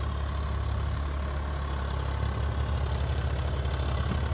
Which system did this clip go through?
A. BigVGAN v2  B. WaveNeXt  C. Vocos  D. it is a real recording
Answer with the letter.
D